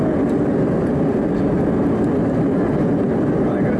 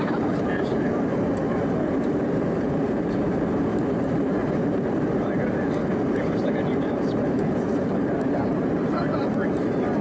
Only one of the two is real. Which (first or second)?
first